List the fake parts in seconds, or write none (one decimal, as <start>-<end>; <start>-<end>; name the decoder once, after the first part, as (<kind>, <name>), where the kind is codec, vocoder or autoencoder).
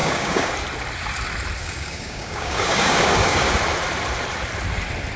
0.0-0.5 (codec, DAC); 1.6-3.5